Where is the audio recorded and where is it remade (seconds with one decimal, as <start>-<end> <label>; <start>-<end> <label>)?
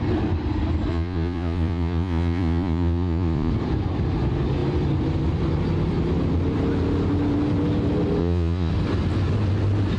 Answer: 0.0-0.9 recorded; 0.9-3.5 remade; 3.5-8.2 recorded; 8.2-8.7 remade; 8.7-10.0 recorded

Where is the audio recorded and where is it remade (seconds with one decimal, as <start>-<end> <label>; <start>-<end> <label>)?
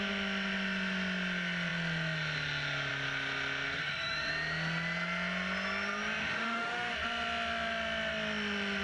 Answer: 0.0-3.8 recorded; 3.8-4.3 remade; 4.3-6.2 recorded; 6.2-6.9 remade; 6.9-8.8 recorded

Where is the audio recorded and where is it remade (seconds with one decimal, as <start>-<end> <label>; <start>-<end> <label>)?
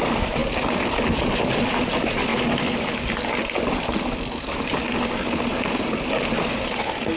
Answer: 0.0-7.2 recorded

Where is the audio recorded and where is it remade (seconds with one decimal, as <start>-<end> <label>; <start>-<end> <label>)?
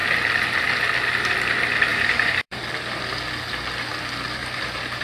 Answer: 0.0-1.9 recorded; 1.9-2.6 remade; 2.6-4.4 recorded; 4.4-5.0 remade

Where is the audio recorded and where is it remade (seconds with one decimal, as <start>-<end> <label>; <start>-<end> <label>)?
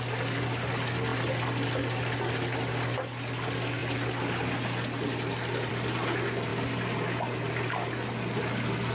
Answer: 0.0-8.9 recorded